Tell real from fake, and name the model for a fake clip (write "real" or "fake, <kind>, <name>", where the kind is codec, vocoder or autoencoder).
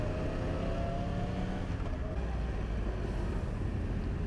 real